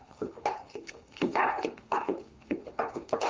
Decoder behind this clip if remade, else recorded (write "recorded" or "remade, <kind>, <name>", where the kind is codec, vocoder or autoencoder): remade, codec, HILCodec